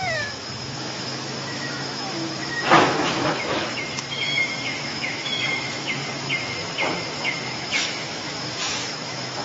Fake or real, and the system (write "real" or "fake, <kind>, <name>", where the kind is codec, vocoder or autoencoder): fake, autoencoder, DAC-VAE